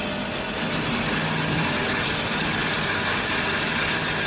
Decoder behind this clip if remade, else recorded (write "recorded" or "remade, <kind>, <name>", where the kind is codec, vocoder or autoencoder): recorded